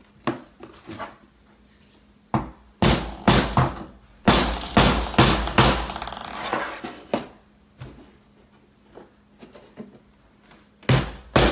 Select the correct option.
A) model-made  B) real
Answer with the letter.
B